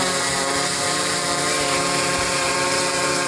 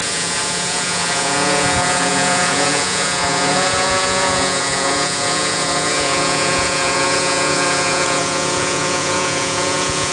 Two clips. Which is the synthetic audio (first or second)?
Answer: second